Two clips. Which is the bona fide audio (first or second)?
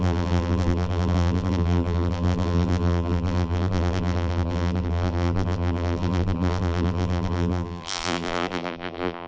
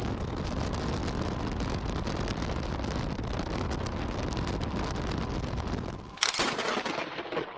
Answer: second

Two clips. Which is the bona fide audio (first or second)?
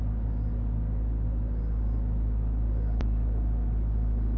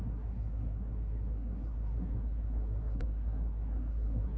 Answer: first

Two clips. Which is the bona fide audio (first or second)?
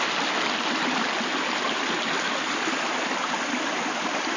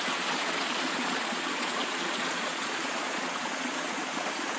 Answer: first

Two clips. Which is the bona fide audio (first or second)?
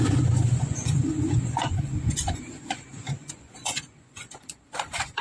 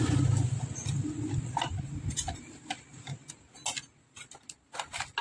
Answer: second